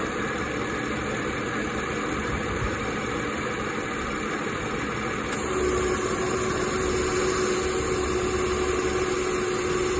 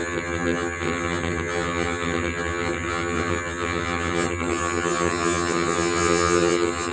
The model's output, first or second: second